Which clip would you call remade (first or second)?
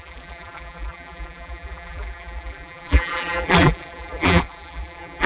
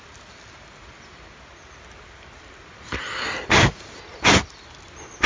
first